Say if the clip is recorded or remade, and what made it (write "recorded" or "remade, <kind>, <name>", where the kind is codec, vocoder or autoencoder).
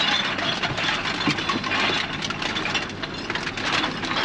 recorded